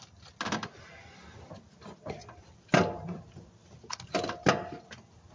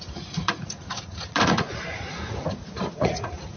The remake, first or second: second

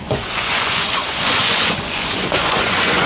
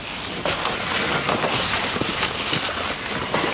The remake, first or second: first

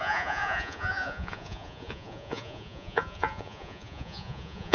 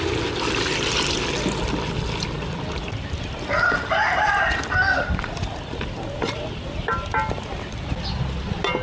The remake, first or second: first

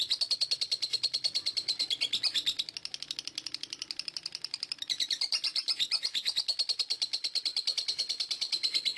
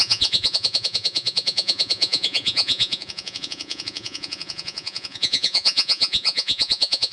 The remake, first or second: second